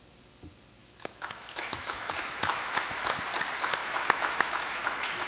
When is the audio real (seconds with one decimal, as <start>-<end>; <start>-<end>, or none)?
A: 0.0-0.8; 3.2-3.8